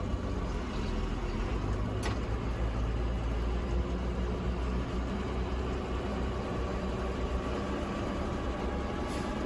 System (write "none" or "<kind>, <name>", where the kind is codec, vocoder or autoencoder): none